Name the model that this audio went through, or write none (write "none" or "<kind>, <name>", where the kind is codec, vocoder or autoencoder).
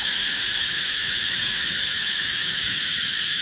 autoencoder, DAC-VAE